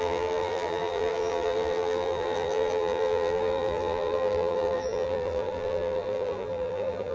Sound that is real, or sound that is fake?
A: fake